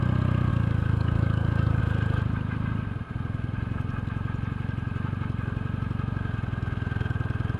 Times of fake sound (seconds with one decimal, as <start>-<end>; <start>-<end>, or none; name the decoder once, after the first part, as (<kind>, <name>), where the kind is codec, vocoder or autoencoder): 0.5-1.8 (codec, DAC)